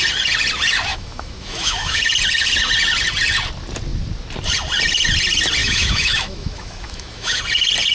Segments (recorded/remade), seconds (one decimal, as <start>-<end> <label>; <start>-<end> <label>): 0.0-0.9 recorded; 0.9-2.0 remade; 2.0-5.6 recorded; 5.6-7.4 remade; 7.4-7.9 recorded